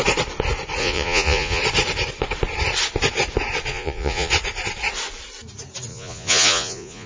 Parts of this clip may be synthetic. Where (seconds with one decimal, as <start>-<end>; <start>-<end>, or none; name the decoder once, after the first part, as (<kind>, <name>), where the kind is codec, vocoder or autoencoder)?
0.8-1.6 (vocoder, Vocos); 3.7-4.3; 5.9-7.1

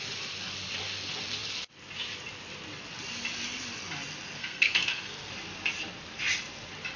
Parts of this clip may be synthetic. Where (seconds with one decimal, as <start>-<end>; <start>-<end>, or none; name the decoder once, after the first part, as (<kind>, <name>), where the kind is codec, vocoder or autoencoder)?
4.4-5.3 (codec, SNAC)

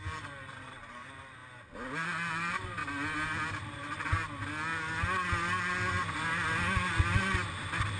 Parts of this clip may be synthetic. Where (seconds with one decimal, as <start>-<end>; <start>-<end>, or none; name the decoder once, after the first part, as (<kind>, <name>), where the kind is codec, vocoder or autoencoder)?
0.0-1.4 (vocoder, BigVGAN v2); 2.3-2.8; 3.5-4.4

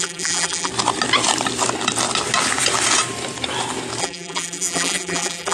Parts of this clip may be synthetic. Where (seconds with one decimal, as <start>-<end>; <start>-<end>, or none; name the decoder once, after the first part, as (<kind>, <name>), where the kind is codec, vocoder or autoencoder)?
0.0-0.7 (vocoder, BigVGAN v2); 4.0-5.5

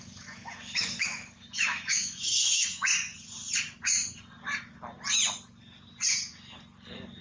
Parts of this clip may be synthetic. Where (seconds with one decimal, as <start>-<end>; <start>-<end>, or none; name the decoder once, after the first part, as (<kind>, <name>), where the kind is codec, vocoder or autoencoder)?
0.0-2.9 (autoencoder, DAC-VAE)

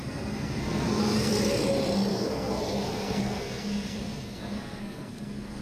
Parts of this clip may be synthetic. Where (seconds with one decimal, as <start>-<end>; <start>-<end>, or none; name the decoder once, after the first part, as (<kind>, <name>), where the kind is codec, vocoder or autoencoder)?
0.0-1.3 (codec, SNAC); 2.1-5.6